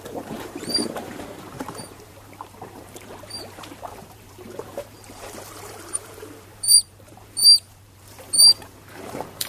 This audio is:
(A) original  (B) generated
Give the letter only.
B